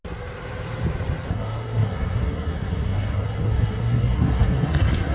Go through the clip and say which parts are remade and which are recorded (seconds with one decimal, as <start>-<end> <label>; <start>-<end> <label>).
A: 0.0-1.3 recorded; 1.3-5.1 remade